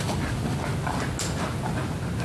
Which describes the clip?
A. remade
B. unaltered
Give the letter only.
B